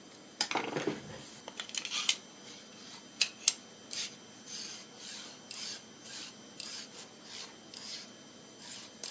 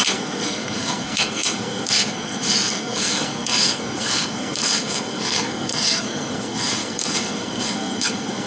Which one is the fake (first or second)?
second